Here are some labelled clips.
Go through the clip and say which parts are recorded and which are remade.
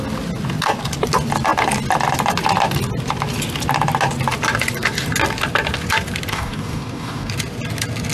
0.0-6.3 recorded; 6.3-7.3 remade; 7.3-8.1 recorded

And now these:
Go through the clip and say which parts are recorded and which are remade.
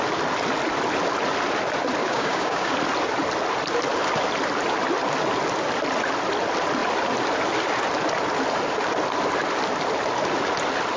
0.0-2.0 recorded; 2.0-2.7 remade; 2.7-11.0 recorded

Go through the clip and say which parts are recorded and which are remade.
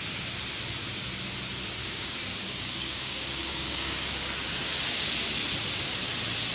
0.0-1.8 recorded; 1.8-4.5 remade; 4.5-6.5 recorded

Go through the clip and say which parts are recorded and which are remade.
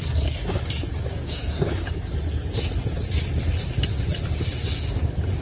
0.0-0.9 recorded; 0.9-2.1 remade; 2.1-4.6 recorded; 4.6-5.4 remade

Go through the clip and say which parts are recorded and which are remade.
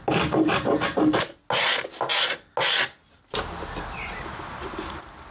0.0-5.3 recorded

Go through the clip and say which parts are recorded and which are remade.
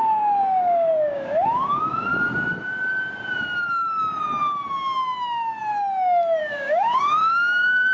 0.0-2.1 remade; 2.1-6.4 recorded; 6.4-7.9 remade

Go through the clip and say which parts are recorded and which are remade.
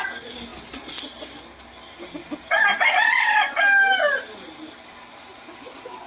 0.0-6.1 recorded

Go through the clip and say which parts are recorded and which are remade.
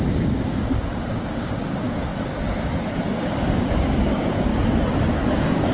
0.0-2.1 remade; 2.1-3.1 recorded; 3.1-4.5 remade; 4.5-5.1 recorded; 5.1-5.7 remade